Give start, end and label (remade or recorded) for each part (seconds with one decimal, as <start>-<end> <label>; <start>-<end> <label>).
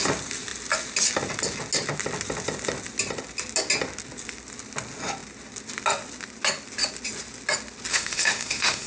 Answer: 0.0-7.9 recorded; 7.9-8.9 remade